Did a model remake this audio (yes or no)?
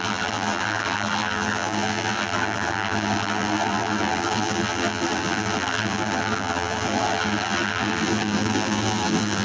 yes